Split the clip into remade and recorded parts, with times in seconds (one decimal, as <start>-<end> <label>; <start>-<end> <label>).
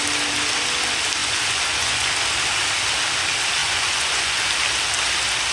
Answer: 0.0-1.2 recorded; 1.2-2.1 remade; 2.1-3.6 recorded; 3.6-4.5 remade; 4.5-5.5 recorded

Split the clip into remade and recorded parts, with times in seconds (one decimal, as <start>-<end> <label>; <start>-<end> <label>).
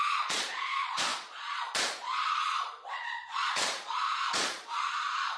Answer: 0.0-5.4 remade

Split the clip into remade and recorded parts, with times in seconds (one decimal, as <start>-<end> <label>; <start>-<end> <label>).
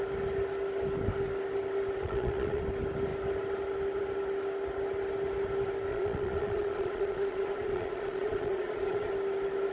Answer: 0.0-2.0 recorded; 2.0-2.6 remade; 2.6-5.9 recorded; 5.9-9.1 remade; 9.1-9.7 recorded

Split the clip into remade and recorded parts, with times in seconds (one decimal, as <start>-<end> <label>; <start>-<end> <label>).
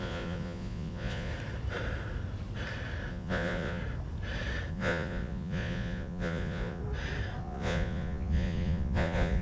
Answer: 0.0-1.3 remade; 1.3-3.1 recorded; 3.1-3.8 remade; 3.8-4.7 recorded; 4.7-6.8 remade; 6.8-7.4 recorded; 7.4-9.4 remade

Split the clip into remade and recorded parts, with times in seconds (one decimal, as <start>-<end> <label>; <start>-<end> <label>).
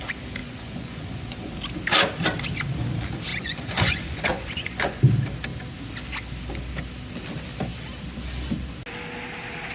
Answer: 0.0-0.4 recorded; 0.4-1.5 remade; 1.5-3.3 recorded; 3.3-5.0 remade; 5.0-9.7 recorded